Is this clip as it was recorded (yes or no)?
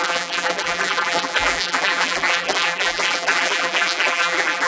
no